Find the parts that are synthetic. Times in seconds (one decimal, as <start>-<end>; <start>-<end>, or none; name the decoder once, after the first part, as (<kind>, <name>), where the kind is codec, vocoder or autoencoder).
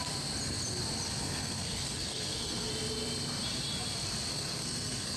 1.2-2.7 (codec, SNAC); 4.3-5.2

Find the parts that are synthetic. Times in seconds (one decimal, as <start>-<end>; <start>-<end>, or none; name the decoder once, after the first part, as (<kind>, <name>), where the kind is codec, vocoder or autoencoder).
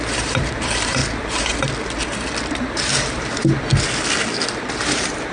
0.0-1.0 (vocoder, BigVGAN v2); 2.5-3.4; 4.8-5.3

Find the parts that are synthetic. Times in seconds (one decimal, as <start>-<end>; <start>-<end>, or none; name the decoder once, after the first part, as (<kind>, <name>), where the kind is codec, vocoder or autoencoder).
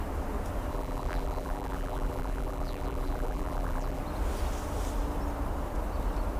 0.7-4.0 (vocoder, BigVGAN v2)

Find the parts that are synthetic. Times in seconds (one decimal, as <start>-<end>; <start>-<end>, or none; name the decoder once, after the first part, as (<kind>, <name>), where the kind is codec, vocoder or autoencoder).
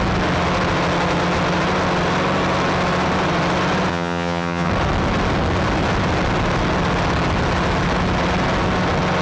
3.9-4.7 (vocoder, HiFi-GAN)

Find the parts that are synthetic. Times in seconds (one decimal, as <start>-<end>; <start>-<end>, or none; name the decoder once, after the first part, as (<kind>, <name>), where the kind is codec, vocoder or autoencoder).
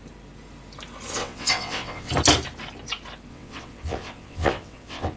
1.2-2.1 (vocoder, WaveNeXt); 3.3-5.2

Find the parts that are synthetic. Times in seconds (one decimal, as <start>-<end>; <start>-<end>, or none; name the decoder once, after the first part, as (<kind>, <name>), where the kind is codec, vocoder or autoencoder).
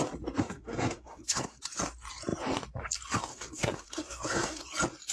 0.4-1.6 (codec, SNAC); 3.3-4.6